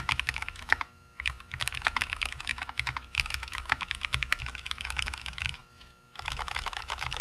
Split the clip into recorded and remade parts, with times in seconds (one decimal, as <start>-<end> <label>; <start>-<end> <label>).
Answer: 0.0-7.2 remade